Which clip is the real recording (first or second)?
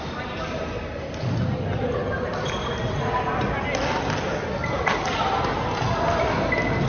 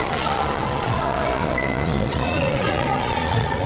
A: first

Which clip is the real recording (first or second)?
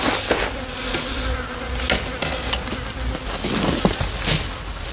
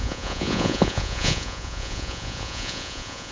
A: first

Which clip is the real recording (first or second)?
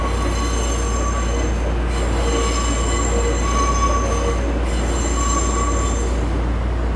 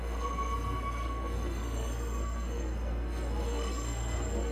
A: first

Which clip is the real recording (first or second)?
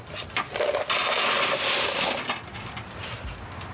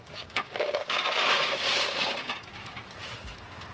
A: first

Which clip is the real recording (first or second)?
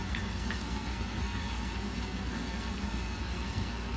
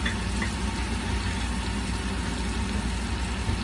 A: second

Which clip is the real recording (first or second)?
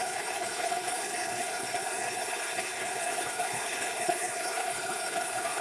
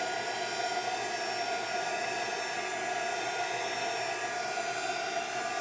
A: second